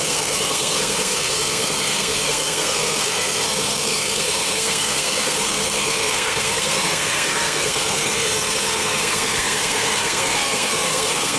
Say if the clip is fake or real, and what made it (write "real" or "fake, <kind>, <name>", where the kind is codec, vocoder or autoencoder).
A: fake, codec, SNAC